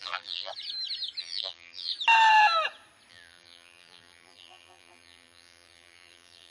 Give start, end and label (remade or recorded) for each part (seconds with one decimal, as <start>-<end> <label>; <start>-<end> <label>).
0.0-0.5 remade; 0.5-1.2 recorded; 1.2-1.9 remade; 1.9-3.1 recorded; 3.1-6.5 remade